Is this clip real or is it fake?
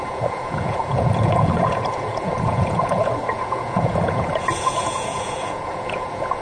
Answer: fake